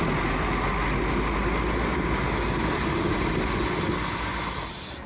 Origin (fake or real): real